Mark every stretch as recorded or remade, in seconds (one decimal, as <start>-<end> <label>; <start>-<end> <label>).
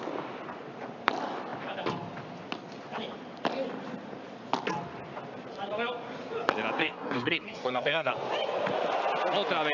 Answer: 0.0-6.8 recorded; 6.8-8.1 remade; 8.1-9.7 recorded